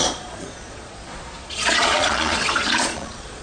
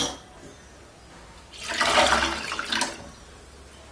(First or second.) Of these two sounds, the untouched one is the second